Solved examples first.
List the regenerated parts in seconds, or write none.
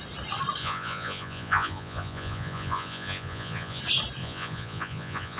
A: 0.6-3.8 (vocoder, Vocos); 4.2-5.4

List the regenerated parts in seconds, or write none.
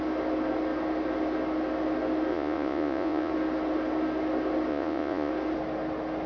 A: 2.3-3.3 (vocoder, Vocos); 4.7-5.3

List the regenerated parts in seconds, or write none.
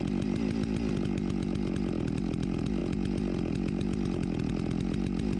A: none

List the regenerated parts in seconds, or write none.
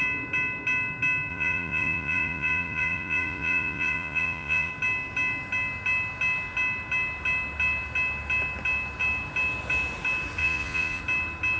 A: 1.3-4.7 (vocoder, Vocos); 10.4-11.0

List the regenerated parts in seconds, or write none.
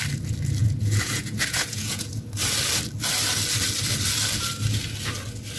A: 0.6-2.3 (vocoder, Vocos)